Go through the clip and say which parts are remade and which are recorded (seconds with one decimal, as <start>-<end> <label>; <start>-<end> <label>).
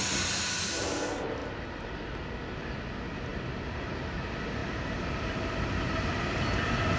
0.0-3.3 recorded; 3.3-4.0 remade; 4.0-4.6 recorded; 4.6-6.0 remade; 6.0-7.0 recorded